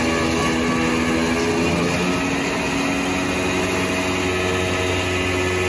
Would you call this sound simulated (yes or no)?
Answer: no